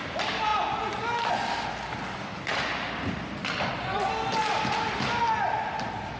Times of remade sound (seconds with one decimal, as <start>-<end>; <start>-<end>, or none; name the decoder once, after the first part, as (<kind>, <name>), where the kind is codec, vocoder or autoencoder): none